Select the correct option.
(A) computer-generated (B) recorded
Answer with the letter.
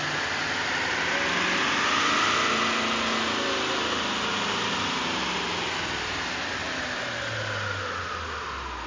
B